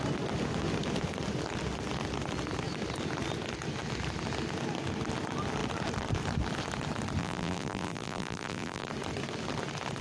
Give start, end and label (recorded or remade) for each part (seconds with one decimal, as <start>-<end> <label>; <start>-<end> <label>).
0.0-7.2 recorded; 7.2-8.9 remade; 8.9-10.0 recorded